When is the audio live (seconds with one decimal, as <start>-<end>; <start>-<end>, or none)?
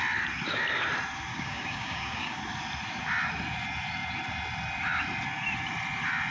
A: 0.0-1.3; 2.4-6.3